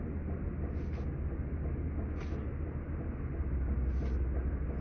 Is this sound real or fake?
real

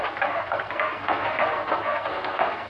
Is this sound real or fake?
fake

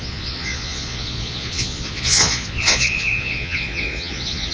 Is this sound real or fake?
fake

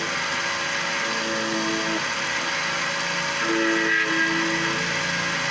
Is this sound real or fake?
real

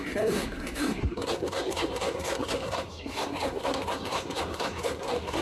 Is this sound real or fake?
fake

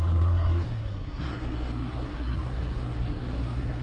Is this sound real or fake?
fake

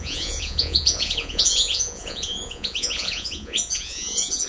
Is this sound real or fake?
fake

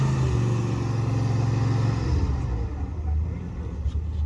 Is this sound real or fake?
real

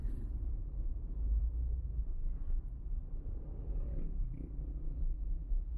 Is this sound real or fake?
fake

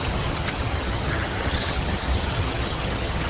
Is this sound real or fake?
fake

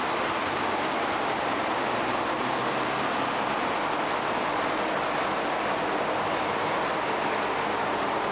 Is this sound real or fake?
real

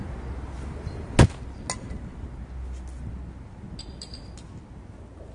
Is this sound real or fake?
real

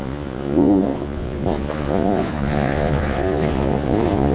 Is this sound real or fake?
fake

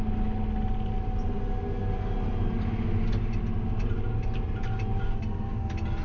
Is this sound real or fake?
real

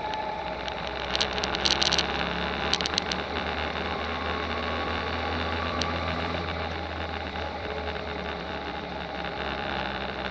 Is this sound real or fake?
fake